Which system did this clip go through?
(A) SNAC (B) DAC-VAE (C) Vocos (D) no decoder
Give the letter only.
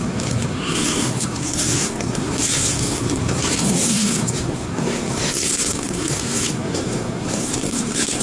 A